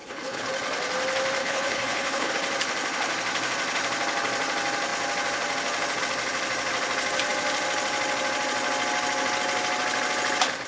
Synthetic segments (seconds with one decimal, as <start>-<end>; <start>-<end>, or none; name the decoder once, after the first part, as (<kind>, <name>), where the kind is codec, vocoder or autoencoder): 0.0-0.5 (codec, HILCodec); 1.4-2.3